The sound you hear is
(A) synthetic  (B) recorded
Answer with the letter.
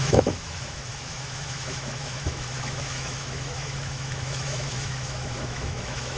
A